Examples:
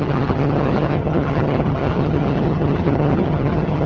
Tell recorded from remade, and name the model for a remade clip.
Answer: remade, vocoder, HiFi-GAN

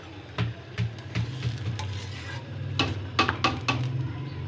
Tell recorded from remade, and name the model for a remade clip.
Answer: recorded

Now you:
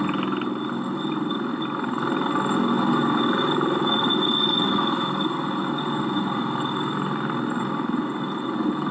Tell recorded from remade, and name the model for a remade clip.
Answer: recorded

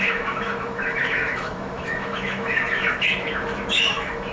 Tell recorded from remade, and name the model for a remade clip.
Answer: remade, autoencoder, DAC-VAE